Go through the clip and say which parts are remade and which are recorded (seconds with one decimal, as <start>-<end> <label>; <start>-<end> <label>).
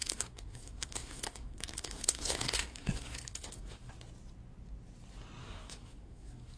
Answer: 0.0-3.9 remade; 3.9-5.4 recorded; 5.4-6.6 remade